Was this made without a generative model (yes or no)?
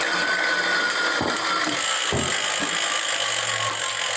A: yes